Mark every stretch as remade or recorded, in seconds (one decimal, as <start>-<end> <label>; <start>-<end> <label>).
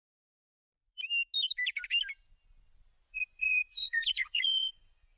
0.0-3.1 recorded; 3.1-5.2 remade